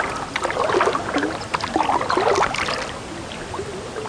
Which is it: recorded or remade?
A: recorded